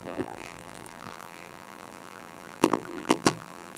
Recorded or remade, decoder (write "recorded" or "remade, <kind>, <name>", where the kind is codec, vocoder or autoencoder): remade, vocoder, BigVGAN v2